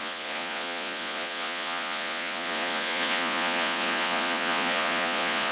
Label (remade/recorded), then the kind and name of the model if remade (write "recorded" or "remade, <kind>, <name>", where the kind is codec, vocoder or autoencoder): remade, vocoder, Vocos